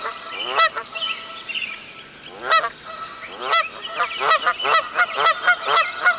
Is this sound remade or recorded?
recorded